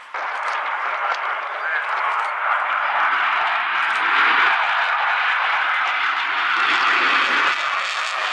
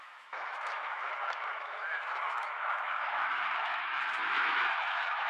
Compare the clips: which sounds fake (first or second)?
second